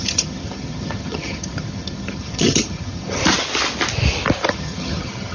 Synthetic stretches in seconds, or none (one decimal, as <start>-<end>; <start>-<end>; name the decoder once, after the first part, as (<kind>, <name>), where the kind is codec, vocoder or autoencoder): 0.0-3.2 (vocoder, HiFi-GAN); 4.5-5.3